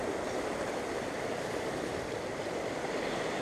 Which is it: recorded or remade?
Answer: remade